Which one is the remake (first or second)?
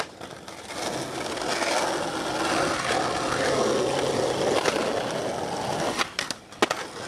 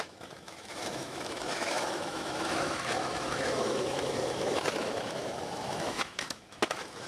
second